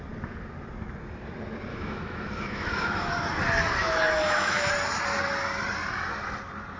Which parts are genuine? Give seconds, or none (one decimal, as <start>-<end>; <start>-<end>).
0.0-1.7; 3.1-3.8; 4.7-6.8